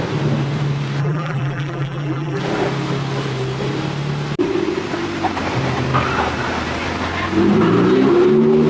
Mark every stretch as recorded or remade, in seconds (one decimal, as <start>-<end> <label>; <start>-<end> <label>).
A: 0.0-1.0 recorded; 1.0-2.4 remade; 2.4-8.7 recorded